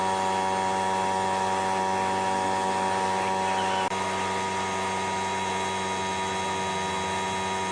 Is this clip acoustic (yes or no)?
yes